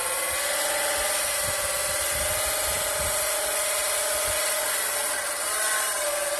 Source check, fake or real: real